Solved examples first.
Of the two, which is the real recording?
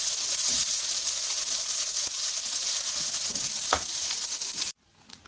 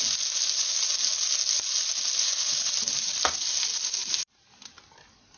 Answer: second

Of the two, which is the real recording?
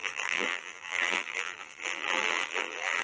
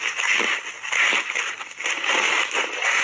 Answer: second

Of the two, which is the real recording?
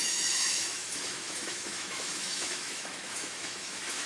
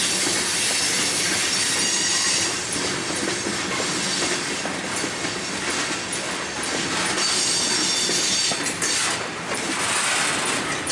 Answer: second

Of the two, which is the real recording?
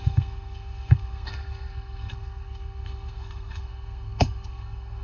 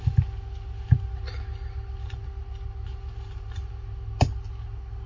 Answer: second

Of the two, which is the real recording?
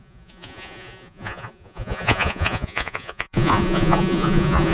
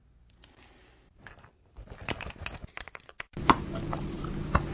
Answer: second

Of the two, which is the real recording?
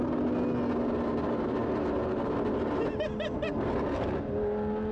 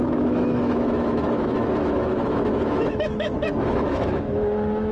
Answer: first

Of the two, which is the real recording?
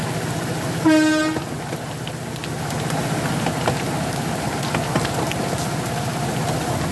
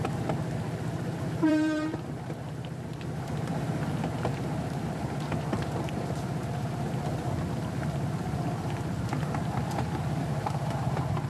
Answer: first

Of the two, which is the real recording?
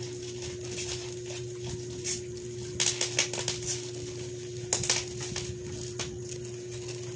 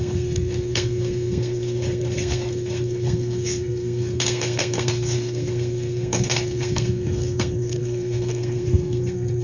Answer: first